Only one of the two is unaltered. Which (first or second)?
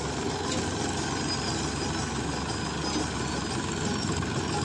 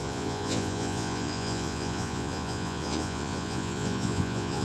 first